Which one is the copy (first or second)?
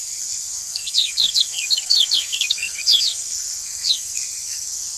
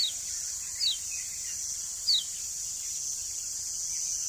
first